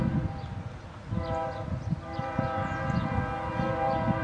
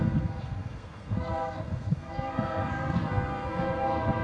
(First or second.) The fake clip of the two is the second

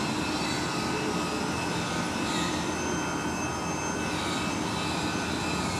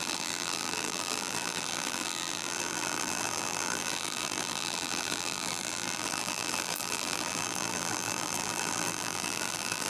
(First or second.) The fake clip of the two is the second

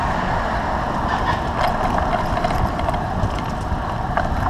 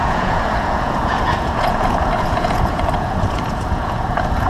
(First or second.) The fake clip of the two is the second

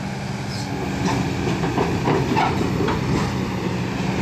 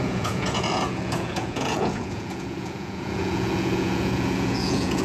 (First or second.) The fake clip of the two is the second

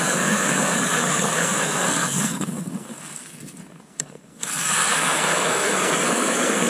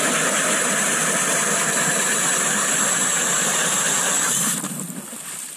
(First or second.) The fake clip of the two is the first